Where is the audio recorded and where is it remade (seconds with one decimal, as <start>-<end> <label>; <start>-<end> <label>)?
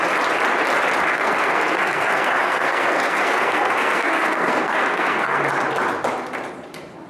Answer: 0.0-1.1 recorded; 1.1-5.4 remade; 5.4-7.1 recorded